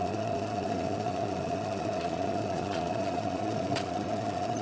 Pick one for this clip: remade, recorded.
remade